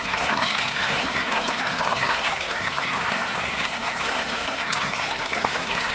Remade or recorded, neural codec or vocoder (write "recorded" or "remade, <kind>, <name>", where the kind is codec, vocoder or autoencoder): remade, codec, SNAC